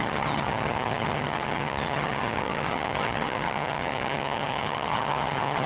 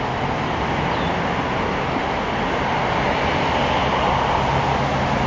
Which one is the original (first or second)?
second